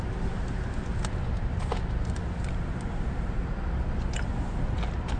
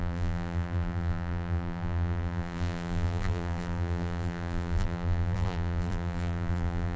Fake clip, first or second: second